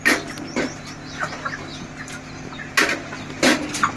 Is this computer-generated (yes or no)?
no